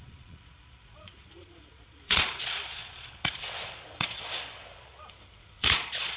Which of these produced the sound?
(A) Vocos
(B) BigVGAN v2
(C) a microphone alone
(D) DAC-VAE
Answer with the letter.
A